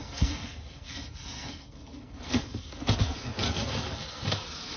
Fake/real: fake